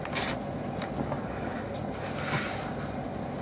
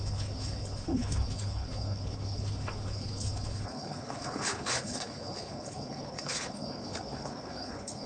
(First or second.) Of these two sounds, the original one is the first